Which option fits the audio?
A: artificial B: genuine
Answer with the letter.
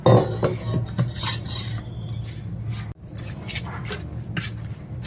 B